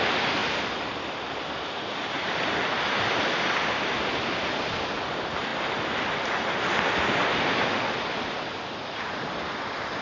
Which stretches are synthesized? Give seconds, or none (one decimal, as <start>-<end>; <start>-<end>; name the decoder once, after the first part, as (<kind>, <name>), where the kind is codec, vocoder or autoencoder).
0.4-4.6 (vocoder, BigVGAN v2)